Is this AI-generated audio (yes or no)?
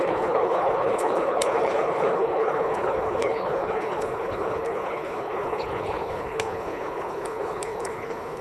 yes